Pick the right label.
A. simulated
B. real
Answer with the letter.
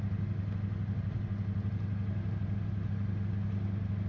B